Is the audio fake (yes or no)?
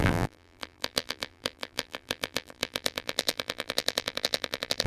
yes